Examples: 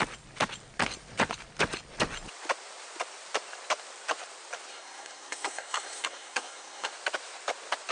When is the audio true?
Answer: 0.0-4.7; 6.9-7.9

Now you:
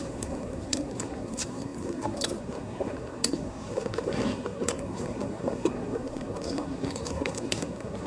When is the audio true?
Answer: none

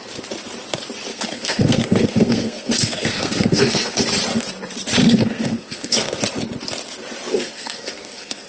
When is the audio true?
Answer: 0.0-1.1; 4.0-5.0; 6.2-7.3

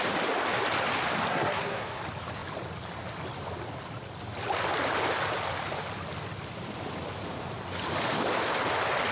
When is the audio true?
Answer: 0.0-1.3; 2.0-9.1

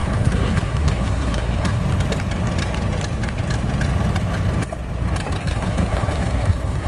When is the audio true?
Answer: 1.8-5.4

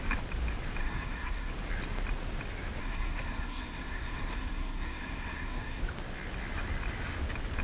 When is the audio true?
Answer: 0.0-0.8; 1.5-2.8; 5.8-7.6